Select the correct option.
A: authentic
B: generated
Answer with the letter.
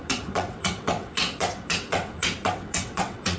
B